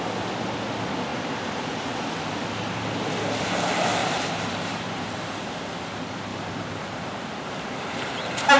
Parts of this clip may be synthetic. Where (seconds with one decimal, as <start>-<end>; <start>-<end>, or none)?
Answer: 1.1-1.7; 4.0-5.6; 6.3-8.6